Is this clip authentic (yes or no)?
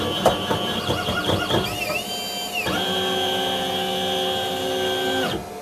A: yes